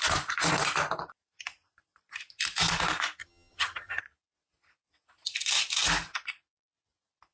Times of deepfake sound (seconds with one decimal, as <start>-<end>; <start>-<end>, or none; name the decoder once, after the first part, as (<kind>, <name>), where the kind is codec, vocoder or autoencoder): 3.2-4.0 (vocoder, HiFi-GAN)